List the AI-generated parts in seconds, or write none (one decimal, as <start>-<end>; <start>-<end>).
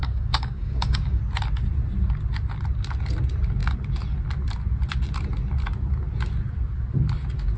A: 0.0-1.2